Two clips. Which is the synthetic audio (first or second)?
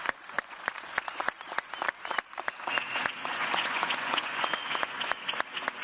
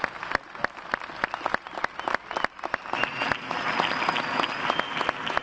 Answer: first